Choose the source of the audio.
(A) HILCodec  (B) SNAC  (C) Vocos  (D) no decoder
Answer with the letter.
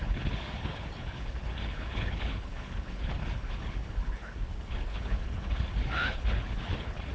A